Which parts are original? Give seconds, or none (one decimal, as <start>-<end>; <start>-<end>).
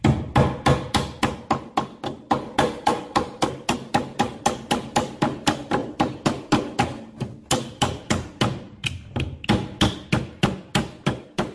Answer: 0.0-11.5